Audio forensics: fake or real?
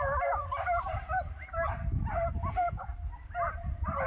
real